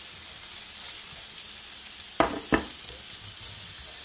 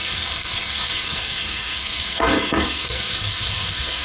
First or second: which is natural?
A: first